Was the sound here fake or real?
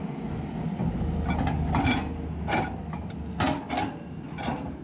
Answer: real